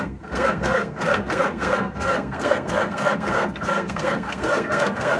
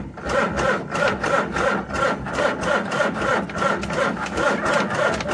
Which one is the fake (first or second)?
first